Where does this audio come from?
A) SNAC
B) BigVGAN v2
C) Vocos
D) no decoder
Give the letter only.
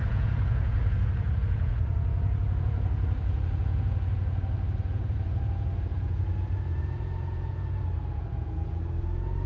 C